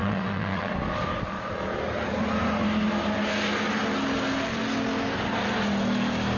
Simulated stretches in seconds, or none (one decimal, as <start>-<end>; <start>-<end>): 0.0-0.7